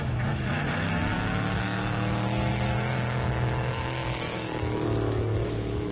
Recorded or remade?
remade